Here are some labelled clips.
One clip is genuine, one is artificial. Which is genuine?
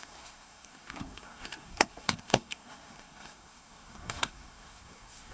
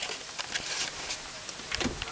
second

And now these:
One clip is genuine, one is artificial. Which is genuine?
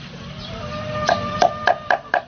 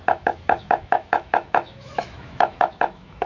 first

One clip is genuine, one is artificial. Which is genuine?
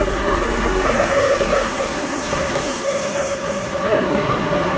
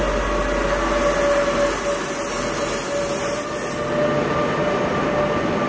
second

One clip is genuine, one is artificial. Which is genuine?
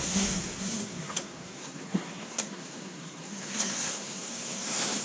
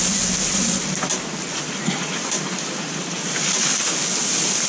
second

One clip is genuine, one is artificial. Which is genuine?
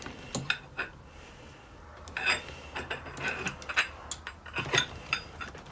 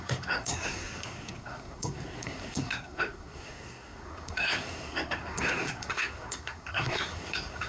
first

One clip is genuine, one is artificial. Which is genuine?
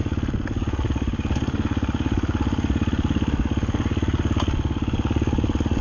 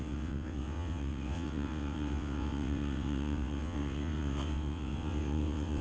first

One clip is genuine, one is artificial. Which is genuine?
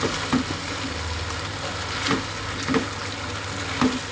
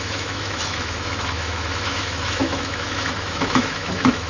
first